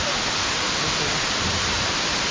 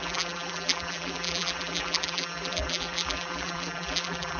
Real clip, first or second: first